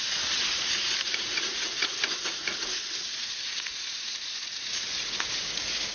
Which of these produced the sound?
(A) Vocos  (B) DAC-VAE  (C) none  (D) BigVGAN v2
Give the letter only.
A